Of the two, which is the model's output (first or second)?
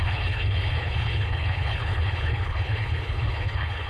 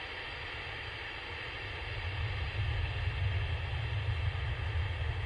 first